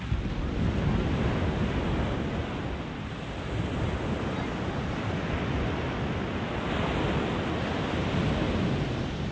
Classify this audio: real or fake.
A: real